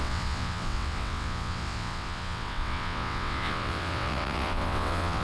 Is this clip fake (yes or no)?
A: yes